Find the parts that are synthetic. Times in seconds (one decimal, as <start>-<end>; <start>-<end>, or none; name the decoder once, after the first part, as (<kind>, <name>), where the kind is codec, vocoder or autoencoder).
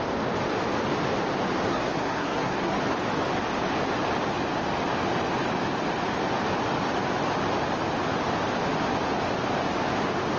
1.7-2.8 (codec, SNAC)